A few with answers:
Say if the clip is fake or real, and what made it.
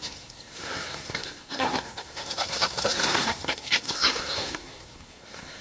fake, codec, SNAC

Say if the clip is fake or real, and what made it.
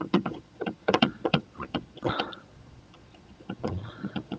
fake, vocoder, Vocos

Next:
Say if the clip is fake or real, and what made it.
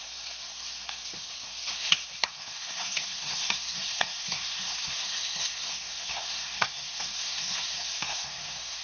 fake, codec, SNAC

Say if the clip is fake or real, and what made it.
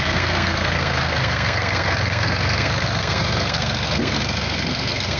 fake, codec, SNAC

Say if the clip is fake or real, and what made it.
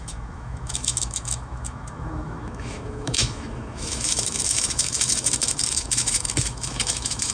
fake, autoencoder, DAC-VAE